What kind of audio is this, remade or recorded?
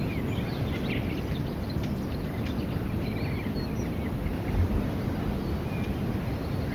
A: recorded